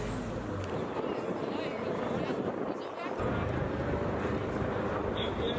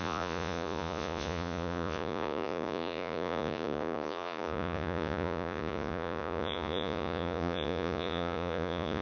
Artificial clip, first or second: second